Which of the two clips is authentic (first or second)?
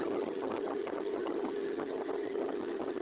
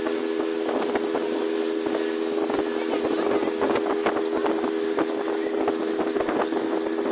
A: second